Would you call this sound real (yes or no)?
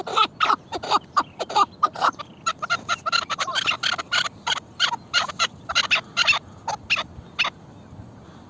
yes